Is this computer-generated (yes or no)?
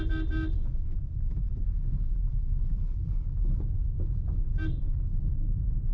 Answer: no